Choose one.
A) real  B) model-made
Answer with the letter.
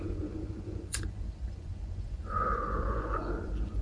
B